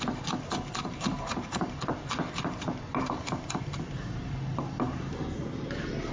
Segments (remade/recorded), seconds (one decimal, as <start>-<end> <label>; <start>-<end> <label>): 0.0-0.8 recorded; 0.8-1.8 remade; 1.8-2.9 recorded; 2.9-5.4 remade; 5.4-6.1 recorded